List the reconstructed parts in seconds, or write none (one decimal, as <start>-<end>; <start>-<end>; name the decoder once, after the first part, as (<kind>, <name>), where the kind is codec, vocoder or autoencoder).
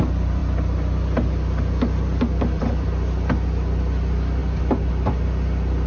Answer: none